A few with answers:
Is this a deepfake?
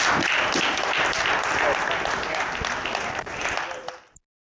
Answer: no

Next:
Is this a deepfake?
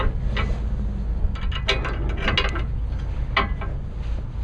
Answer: no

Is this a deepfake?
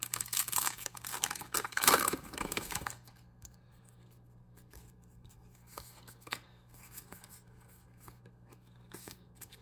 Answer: yes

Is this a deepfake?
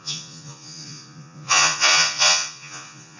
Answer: yes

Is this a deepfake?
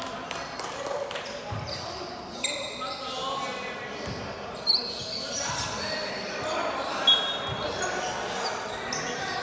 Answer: no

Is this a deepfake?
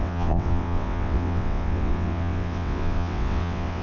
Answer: yes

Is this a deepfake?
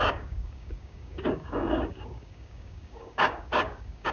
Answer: yes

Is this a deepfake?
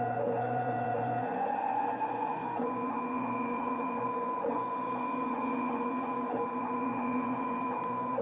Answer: yes